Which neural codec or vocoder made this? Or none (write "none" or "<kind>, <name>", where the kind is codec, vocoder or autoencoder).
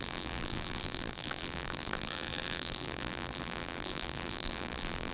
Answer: vocoder, BigVGAN v2